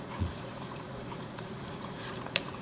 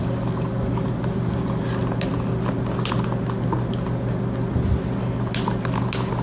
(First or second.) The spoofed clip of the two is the first